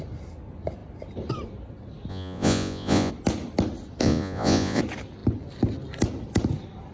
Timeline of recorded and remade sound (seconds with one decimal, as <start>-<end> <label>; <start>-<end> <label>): 0.0-2.1 recorded; 2.1-3.1 remade; 3.1-4.0 recorded; 4.0-4.8 remade; 4.8-6.9 recorded